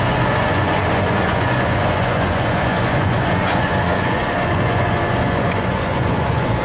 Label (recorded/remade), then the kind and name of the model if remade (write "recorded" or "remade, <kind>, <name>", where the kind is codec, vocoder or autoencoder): remade, vocoder, Vocos